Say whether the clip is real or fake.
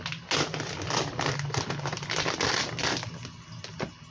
real